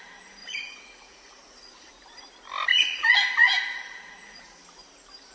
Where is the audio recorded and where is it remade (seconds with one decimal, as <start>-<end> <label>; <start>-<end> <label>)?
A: 0.0-0.4 recorded; 0.4-1.9 remade; 1.9-2.7 recorded; 2.7-4.6 remade; 4.6-5.3 recorded